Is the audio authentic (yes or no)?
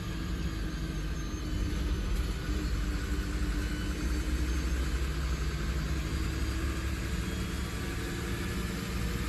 yes